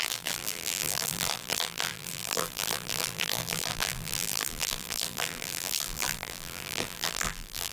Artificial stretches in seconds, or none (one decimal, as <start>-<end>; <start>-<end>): 0.0-7.7